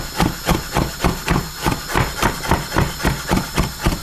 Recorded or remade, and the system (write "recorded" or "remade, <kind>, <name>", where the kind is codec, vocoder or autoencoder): recorded